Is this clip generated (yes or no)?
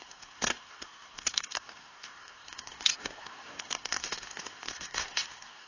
yes